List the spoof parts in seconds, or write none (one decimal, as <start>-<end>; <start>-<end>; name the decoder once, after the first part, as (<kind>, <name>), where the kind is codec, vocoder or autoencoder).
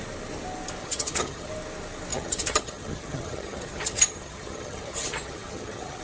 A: 0.8-1.5 (vocoder, HiFi-GAN); 2.1-6.0